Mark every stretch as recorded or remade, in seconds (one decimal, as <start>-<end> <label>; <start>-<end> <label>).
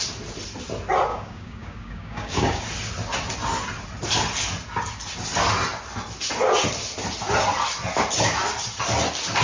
0.0-1.1 recorded; 1.1-2.6 remade; 2.6-9.4 recorded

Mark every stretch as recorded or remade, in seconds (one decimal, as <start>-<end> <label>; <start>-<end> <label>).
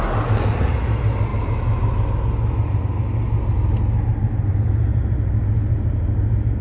0.0-6.6 recorded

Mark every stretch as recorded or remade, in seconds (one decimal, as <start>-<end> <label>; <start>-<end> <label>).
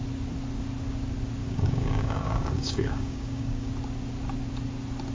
0.0-1.4 recorded; 1.4-3.7 remade; 3.7-5.1 recorded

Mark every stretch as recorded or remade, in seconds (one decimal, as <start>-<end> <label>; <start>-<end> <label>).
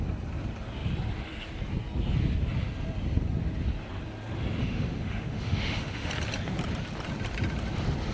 0.0-4.6 recorded; 4.6-6.1 remade; 6.1-8.1 recorded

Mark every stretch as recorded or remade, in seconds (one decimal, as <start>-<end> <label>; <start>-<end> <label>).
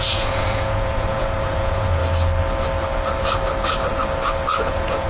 0.0-2.0 remade; 2.0-4.6 recorded; 4.6-5.1 remade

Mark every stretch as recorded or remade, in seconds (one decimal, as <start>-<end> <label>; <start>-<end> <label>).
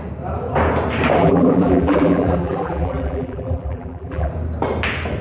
0.0-1.2 recorded; 1.2-4.3 remade; 4.3-5.2 recorded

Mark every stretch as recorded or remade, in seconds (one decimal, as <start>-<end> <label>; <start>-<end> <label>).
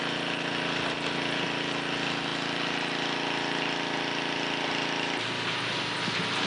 0.0-6.5 recorded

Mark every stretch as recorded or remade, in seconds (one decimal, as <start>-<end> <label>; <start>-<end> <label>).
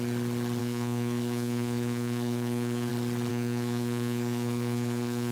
0.0-0.6 recorded; 0.6-2.9 remade; 2.9-3.3 recorded; 3.3-5.3 remade